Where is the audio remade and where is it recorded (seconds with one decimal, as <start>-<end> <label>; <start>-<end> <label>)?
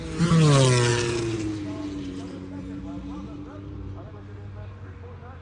0.0-0.9 recorded; 0.9-4.1 remade; 4.1-5.4 recorded